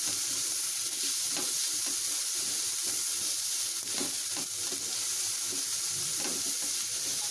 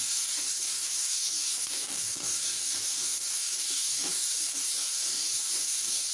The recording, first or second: first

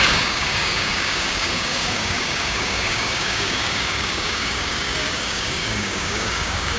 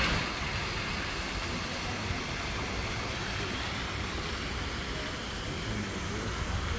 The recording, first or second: second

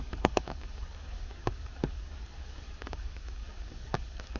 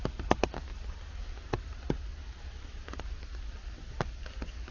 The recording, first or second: second